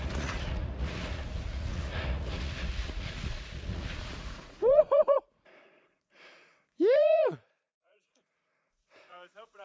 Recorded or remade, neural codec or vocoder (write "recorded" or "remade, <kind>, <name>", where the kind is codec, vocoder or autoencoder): remade, vocoder, Vocos